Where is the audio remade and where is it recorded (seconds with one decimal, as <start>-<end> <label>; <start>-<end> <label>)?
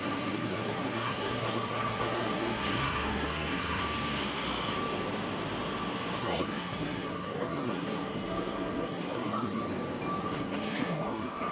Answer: 0.0-3.8 remade; 3.8-6.2 recorded; 6.2-9.6 remade; 9.6-10.2 recorded; 10.2-11.5 remade